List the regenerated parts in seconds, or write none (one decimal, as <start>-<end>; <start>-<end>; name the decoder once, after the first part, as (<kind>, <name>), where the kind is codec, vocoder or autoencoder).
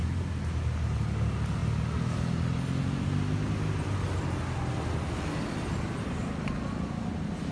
none